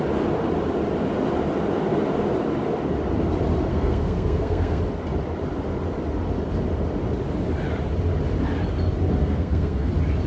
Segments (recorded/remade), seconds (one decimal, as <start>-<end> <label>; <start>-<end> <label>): 0.0-3.7 recorded; 3.7-4.8 remade; 4.8-9.2 recorded; 9.2-9.9 remade; 9.9-10.3 recorded

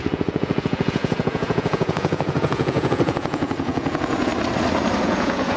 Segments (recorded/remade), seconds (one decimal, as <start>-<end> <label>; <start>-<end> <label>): 0.0-4.3 remade; 4.3-5.0 recorded; 5.0-5.6 remade

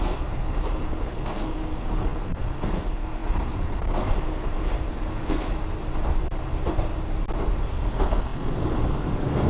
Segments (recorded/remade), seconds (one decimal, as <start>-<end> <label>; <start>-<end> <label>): 0.0-5.5 remade; 5.5-7.7 recorded; 7.7-9.5 remade